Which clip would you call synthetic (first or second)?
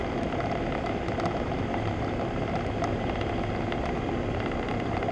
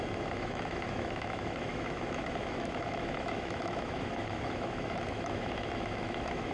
second